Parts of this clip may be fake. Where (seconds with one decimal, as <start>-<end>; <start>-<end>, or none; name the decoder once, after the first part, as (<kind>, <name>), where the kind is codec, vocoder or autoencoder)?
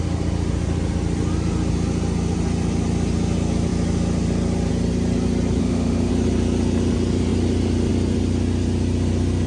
5.6-6.1 (autoencoder, DAC-VAE)